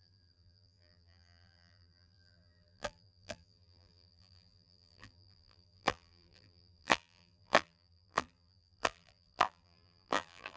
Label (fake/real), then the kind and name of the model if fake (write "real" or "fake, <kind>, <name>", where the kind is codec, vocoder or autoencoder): fake, vocoder, BigVGAN v2